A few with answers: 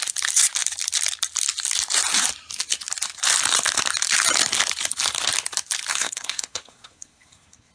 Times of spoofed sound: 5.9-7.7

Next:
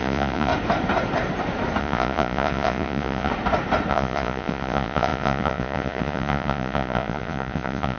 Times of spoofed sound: 0.0-0.5; 1.8-3.3; 3.9-8.0

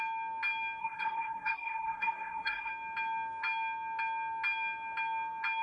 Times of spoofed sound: 0.8-2.7

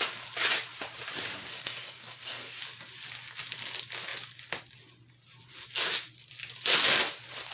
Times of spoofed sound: 1.5-2.6

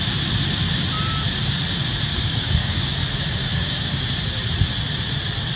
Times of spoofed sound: 2.1-2.8; 3.4-4.1

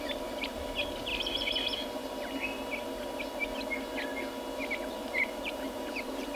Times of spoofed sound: 0.0-1.1; 4.9-6.4

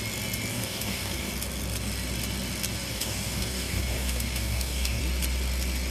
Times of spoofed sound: 0.5-1.3; 2.9-5.0

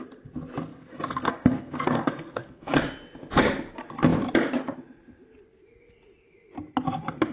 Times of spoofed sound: 0.7-2.7